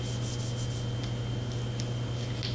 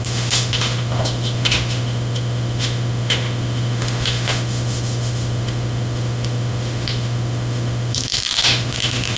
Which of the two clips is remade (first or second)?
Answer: second